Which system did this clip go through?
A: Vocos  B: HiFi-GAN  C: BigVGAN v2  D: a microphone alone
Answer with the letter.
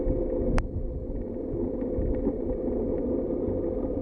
D